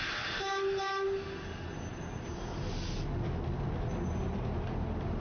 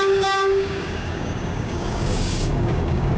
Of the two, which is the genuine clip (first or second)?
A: first